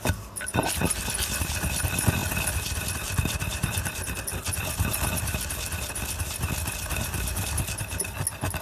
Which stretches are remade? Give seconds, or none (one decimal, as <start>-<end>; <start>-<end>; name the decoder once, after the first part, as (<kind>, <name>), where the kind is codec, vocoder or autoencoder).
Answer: none